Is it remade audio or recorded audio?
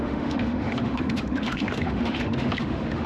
remade